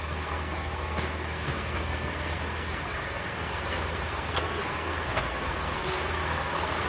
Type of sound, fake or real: fake